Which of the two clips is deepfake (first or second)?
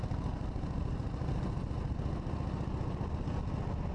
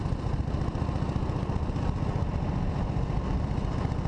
second